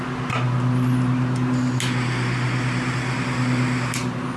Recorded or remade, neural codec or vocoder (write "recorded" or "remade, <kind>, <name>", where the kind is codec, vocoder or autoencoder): recorded